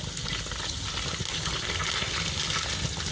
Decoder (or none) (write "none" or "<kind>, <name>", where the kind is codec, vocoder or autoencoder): none